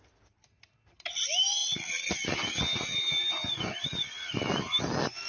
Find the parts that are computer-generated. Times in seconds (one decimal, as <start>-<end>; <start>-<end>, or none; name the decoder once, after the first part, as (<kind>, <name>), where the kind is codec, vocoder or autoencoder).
none